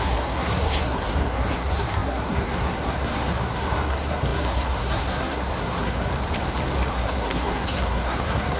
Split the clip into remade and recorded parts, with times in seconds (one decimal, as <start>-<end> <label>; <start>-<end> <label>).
0.0-6.1 remade; 6.1-6.9 recorded; 6.9-8.6 remade